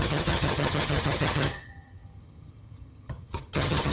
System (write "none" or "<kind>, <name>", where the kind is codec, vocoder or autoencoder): vocoder, HiFi-GAN